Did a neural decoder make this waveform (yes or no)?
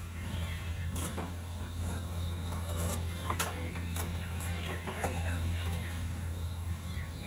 yes